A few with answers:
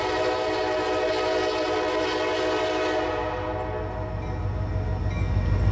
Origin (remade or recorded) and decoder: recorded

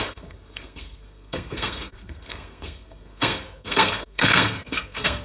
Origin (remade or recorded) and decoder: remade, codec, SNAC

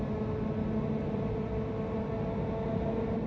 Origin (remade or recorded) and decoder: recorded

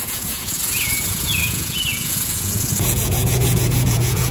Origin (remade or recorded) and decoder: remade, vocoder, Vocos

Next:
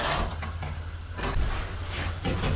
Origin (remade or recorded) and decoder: recorded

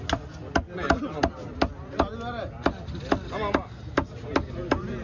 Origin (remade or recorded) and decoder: recorded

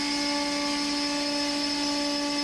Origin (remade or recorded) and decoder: recorded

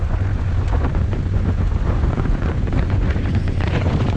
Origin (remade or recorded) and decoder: remade, vocoder, Vocos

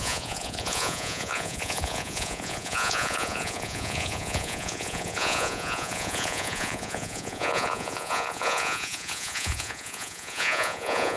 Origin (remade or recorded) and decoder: remade, vocoder, Vocos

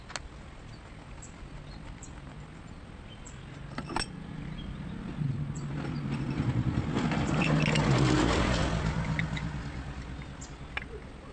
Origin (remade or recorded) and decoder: recorded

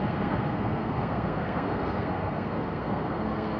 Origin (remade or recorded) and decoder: remade, codec, SNAC